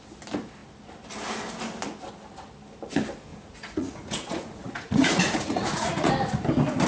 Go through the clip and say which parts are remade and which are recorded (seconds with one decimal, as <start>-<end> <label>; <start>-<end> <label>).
0.0-3.3 recorded; 3.3-6.1 remade; 6.1-6.9 recorded